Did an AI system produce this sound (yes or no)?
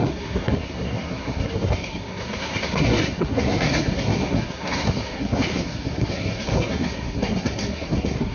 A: yes